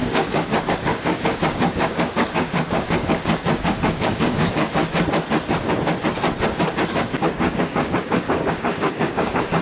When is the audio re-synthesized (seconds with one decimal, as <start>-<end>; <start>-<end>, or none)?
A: 0.0-4.9; 6.9-9.6